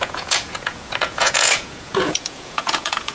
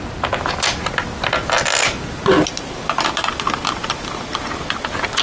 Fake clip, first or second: first